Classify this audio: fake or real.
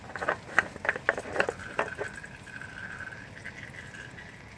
real